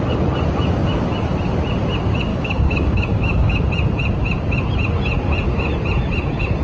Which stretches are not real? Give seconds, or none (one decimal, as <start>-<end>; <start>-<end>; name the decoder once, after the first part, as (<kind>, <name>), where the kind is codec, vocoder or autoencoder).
2.3-3.6 (codec, DAC)